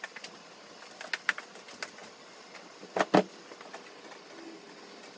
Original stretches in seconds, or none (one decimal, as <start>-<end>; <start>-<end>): 0.0-5.2